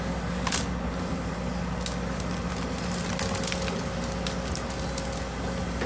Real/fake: real